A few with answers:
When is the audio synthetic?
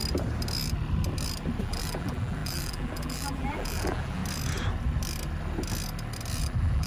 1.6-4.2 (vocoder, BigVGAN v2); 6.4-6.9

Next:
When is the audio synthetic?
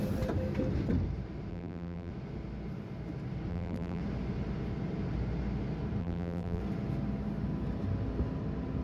1.5-2.1 (vocoder, BigVGAN v2); 3.5-4.0; 6.0-6.6